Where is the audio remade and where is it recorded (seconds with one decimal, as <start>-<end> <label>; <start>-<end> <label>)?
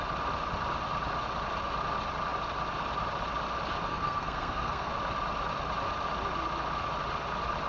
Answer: 0.0-3.9 recorded; 3.9-4.9 remade; 4.9-7.7 recorded